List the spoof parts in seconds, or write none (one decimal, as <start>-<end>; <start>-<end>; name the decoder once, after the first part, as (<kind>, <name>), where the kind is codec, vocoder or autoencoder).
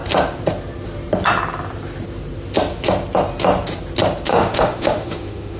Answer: 4.3-5.6 (autoencoder, DAC-VAE)